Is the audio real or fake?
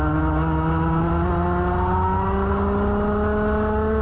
real